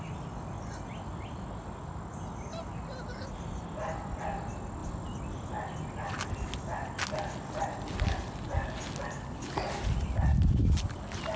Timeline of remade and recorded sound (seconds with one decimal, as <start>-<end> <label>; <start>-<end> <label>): 0.0-11.4 recorded